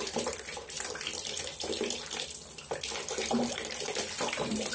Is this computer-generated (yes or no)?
yes